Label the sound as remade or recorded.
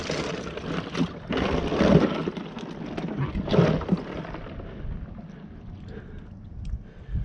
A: recorded